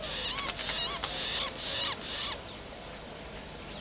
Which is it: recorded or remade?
recorded